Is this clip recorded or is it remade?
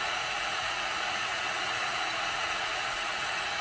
remade